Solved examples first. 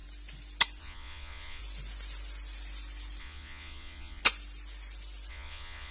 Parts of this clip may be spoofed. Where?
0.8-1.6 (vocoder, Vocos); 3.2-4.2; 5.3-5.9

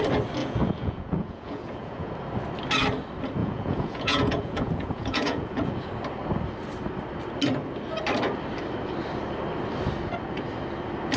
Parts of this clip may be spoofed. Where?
0.4-2.1 (vocoder, Vocos); 3.4-5.9

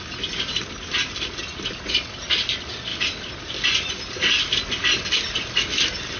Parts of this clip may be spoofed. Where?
none

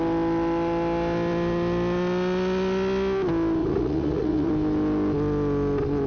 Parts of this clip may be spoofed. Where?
3.6-4.5 (vocoder, Vocos)

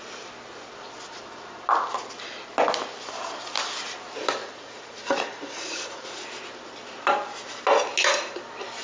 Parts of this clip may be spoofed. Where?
4.4-6.5 (vocoder, Vocos)

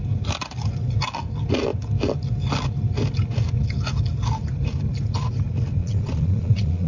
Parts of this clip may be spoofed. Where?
5.8-6.9 (vocoder, Vocos)

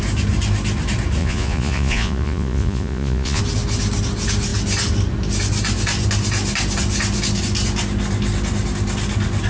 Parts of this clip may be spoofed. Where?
1.2-3.4 (vocoder, Vocos)